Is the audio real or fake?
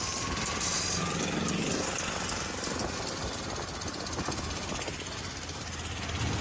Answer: real